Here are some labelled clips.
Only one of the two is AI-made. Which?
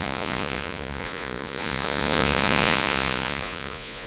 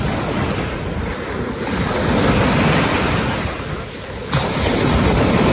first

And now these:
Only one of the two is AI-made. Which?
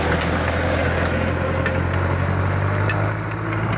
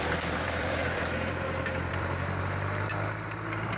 second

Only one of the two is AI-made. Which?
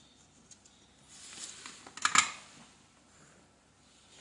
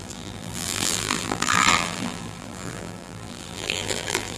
second